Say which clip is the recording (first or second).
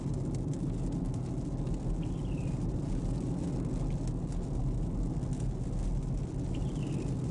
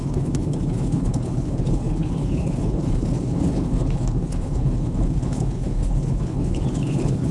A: first